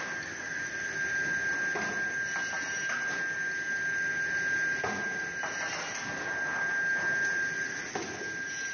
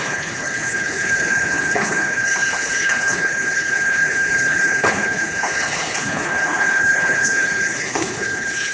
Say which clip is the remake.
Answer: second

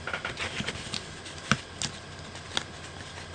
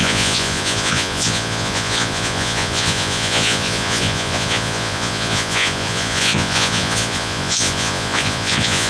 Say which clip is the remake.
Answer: second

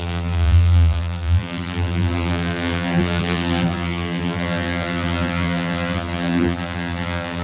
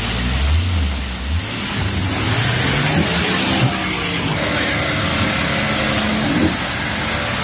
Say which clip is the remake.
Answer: first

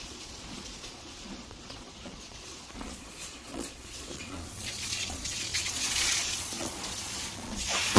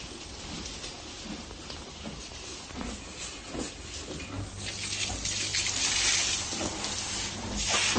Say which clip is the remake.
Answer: first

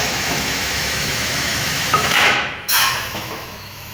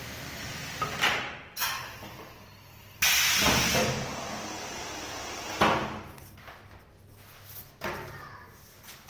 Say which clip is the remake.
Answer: first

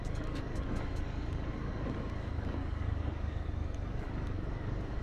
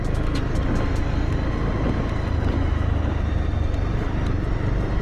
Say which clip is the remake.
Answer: first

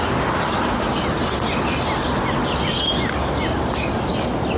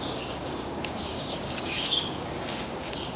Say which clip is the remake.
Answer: second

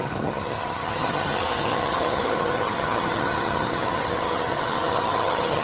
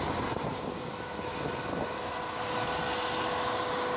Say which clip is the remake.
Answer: first